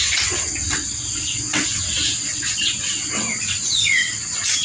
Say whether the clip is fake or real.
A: fake